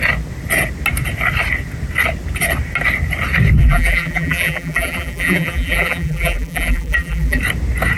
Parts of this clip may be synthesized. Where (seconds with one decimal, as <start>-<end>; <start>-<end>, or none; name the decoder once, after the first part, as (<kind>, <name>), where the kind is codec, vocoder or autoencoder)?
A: 3.6-7.4 (vocoder, BigVGAN v2)